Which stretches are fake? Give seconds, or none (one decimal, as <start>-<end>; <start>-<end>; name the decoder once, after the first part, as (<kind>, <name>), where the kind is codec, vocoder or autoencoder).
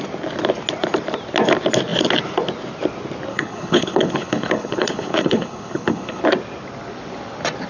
3.3-6.2 (codec, HILCodec)